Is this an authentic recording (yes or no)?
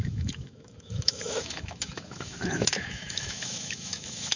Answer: no